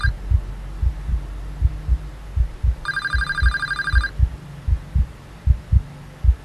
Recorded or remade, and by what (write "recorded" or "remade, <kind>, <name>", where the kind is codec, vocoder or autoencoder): recorded